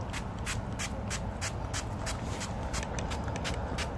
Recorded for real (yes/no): yes